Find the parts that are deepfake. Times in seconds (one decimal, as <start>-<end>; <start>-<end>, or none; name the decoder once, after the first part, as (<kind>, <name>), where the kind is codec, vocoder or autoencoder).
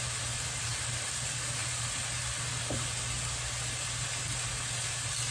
none